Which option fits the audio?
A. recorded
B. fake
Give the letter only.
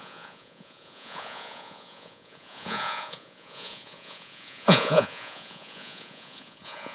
B